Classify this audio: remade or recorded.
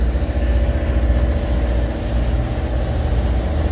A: recorded